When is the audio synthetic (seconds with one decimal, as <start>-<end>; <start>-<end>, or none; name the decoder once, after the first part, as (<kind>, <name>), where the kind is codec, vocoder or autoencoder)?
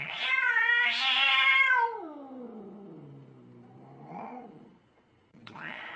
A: 0.0-0.5 (vocoder, Vocos); 4.1-6.0